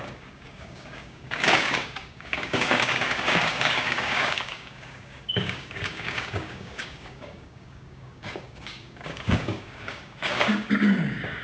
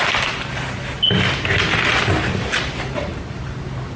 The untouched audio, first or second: second